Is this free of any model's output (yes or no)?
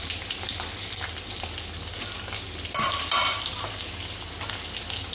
yes